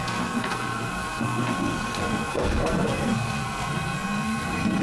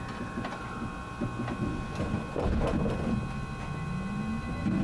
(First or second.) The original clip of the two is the second